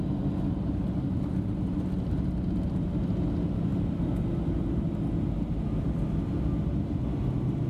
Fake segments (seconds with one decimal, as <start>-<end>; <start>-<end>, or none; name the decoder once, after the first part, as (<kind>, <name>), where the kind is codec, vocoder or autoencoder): none